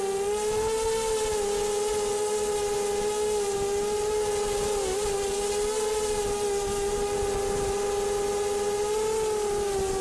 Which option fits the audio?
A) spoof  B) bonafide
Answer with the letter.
B